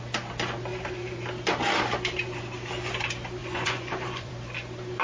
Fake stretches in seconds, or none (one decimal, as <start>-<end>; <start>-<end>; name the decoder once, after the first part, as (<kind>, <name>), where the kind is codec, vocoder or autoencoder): 3.4-4.3 (vocoder, Vocos)